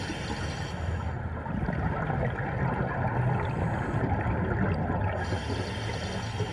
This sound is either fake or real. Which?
real